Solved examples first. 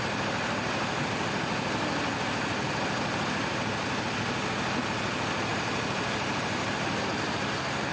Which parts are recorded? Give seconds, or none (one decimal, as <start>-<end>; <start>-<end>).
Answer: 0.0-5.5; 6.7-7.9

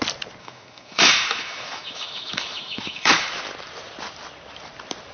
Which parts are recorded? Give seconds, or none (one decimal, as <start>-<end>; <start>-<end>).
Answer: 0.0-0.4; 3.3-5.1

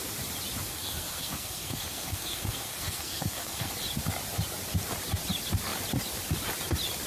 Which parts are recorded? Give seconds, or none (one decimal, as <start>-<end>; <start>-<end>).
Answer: 0.0-0.7; 3.7-7.1

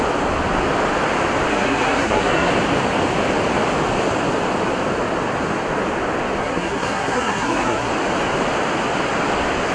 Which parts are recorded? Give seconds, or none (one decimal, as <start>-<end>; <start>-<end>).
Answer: 0.0-1.5; 2.5-6.4; 7.9-9.7

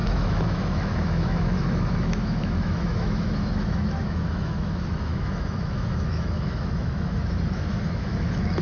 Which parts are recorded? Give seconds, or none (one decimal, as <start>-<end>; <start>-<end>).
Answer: none

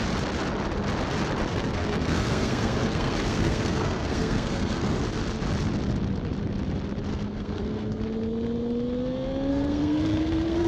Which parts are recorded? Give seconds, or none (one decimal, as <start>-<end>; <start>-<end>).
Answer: 0.0-1.5; 5.0-7.1; 8.0-9.5

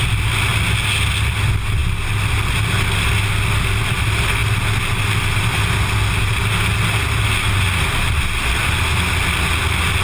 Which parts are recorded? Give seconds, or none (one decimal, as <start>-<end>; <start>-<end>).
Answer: 0.0-10.0

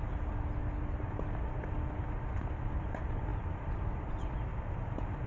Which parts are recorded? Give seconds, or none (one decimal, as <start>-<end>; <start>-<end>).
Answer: 0.0-3.3; 3.9-4.5